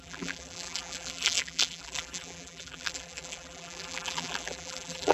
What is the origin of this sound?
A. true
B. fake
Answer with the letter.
B